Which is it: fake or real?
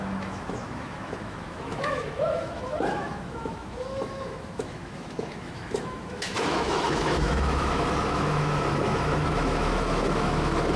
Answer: fake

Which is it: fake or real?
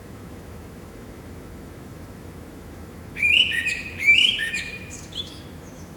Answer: fake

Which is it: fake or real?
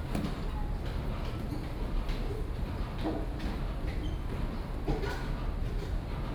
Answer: real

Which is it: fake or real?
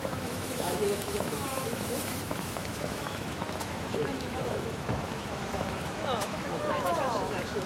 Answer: fake